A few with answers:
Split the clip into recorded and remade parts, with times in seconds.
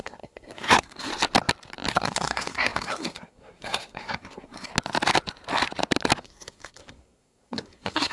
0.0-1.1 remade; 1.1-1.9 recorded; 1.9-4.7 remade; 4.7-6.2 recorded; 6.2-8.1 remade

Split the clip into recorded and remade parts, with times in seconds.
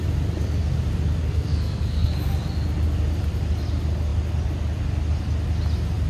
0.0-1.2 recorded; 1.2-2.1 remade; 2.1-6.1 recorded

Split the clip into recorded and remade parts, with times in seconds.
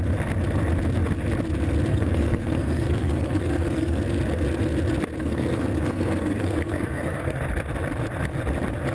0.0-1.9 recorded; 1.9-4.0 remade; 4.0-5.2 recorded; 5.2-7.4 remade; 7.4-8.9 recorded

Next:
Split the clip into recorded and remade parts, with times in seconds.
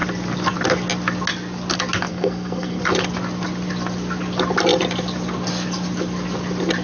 0.0-2.1 recorded; 2.1-2.8 remade; 2.8-6.8 recorded